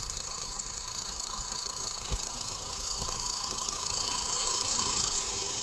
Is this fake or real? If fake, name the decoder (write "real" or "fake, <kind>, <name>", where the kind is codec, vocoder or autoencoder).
fake, codec, SNAC